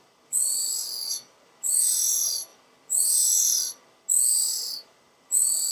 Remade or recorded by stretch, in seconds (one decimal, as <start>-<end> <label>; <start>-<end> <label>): 0.0-5.7 recorded